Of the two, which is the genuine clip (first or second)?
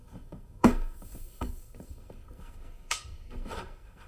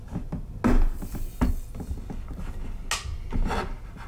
second